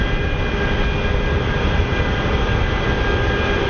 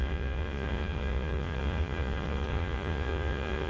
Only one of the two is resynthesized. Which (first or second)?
second